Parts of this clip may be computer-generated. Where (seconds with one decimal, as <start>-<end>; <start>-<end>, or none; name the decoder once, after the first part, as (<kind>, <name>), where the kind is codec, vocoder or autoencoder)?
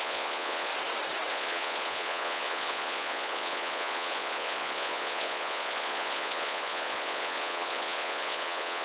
0.0-0.7 (vocoder, Vocos); 1.3-8.8